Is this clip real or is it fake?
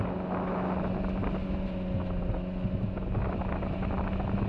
real